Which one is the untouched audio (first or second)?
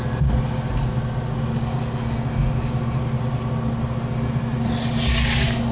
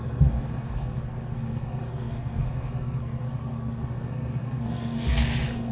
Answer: first